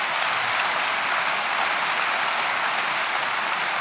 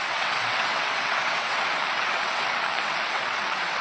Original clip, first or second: first